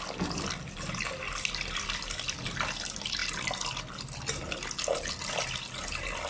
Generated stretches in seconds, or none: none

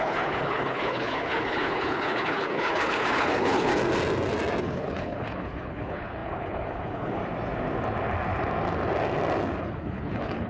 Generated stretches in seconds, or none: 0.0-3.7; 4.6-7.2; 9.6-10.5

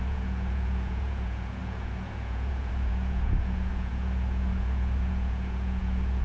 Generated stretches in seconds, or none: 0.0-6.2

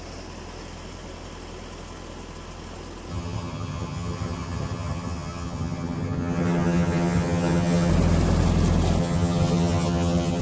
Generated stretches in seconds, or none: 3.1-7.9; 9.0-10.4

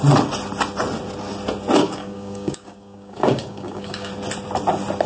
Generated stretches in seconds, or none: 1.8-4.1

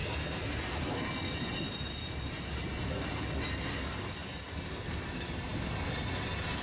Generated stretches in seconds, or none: none

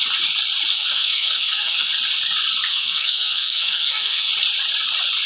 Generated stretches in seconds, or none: 0.7-1.9; 2.7-4.3

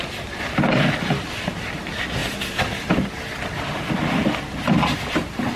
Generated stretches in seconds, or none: none